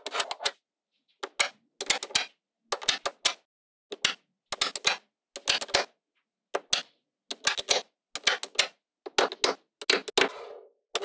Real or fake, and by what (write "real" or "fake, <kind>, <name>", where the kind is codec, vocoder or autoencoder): real